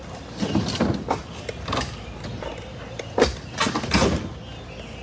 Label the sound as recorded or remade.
recorded